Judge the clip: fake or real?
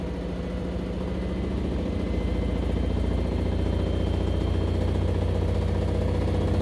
real